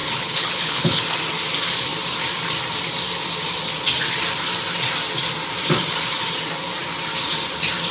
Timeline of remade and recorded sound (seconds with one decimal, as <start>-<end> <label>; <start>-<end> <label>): 0.0-1.0 remade; 1.0-7.9 recorded